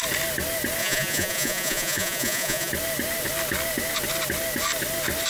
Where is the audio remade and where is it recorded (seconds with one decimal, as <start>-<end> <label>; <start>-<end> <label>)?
0.0-0.8 recorded; 0.8-2.7 remade; 2.7-5.3 recorded